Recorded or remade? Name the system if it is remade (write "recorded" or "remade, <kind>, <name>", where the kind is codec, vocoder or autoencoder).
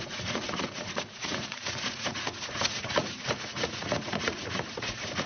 remade, vocoder, Vocos